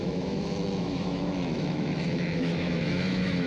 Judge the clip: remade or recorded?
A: remade